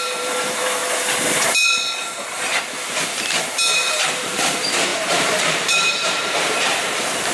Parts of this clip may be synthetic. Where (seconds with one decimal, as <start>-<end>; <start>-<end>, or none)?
0.0-0.8; 3.5-7.3